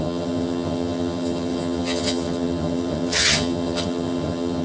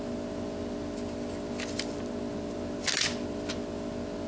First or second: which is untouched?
second